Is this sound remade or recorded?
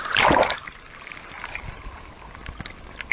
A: recorded